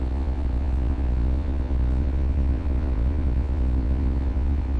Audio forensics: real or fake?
fake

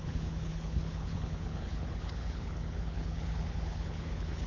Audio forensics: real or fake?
fake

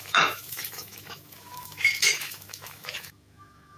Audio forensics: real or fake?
fake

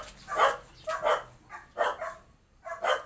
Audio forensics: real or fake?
real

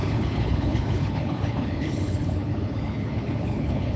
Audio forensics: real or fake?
fake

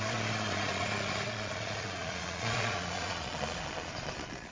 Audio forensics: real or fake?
fake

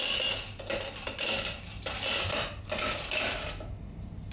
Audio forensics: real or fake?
real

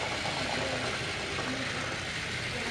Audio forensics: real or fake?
real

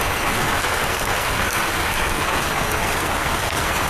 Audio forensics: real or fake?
fake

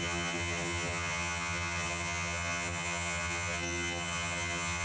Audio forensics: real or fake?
fake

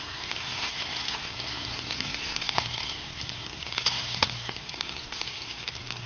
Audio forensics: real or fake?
fake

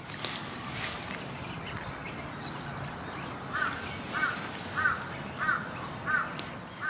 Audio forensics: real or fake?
real